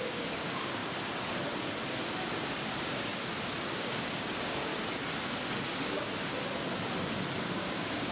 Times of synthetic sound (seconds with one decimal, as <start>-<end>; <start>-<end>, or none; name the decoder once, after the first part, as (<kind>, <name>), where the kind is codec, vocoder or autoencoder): 0.0-0.8 (codec, DAC); 2.4-3.1; 3.7-4.7; 7.4-8.1